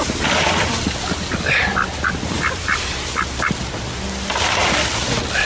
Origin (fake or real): real